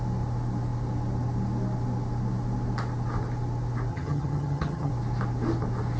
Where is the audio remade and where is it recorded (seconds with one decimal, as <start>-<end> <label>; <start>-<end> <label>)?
0.0-3.9 recorded; 3.9-4.9 remade; 4.9-6.0 recorded